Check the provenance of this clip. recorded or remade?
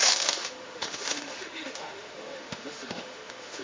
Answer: remade